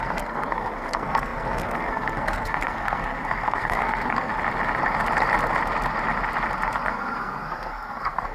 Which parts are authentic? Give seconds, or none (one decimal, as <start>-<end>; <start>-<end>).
4.3-6.9

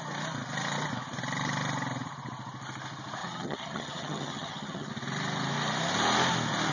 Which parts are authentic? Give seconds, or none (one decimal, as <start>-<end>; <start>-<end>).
0.0-3.2; 4.9-6.7